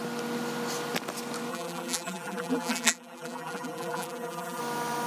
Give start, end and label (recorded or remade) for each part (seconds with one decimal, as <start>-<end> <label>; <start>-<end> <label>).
0.0-1.5 recorded; 1.5-4.6 remade; 4.6-5.1 recorded